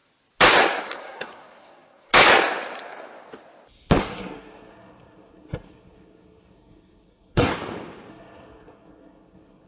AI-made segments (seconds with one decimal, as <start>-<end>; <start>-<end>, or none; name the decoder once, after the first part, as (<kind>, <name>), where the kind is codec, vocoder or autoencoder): 0.8-2.1 (codec, SNAC); 4.0-7.5; 8.1-9.7

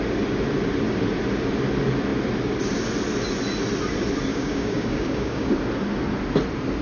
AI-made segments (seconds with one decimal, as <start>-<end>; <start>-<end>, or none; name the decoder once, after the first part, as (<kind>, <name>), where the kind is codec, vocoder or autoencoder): 4.3-5.5 (codec, DAC)

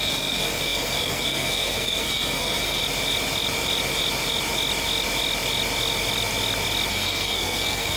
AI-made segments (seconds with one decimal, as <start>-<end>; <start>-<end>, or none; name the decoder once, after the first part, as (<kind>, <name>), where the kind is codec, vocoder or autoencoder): 0.0-2.8 (codec, SNAC); 6.9-8.0

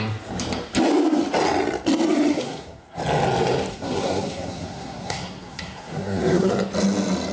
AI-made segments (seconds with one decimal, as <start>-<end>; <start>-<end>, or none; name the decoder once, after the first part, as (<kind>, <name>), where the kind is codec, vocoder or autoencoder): 2.3-3.0 (codec, SNAC); 3.7-6.5

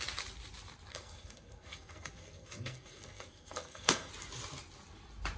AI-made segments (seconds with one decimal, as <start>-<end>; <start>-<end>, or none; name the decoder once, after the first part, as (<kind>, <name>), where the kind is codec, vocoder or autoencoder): 0.9-4.1 (codec, SNAC)